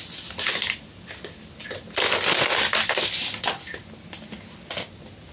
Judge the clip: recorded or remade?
recorded